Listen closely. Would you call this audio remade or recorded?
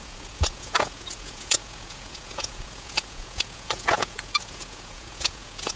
remade